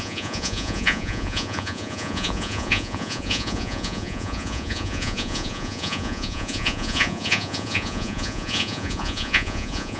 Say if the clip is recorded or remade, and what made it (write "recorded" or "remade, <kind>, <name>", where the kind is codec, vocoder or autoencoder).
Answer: remade, vocoder, Vocos